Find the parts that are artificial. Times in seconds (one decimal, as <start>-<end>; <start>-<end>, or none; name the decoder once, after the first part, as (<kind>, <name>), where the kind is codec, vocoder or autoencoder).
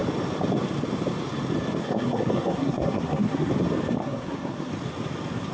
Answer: 1.8-3.5 (codec, SNAC); 4.0-4.7